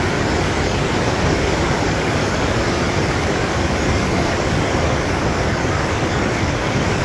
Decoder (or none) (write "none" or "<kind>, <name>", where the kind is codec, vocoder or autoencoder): codec, DAC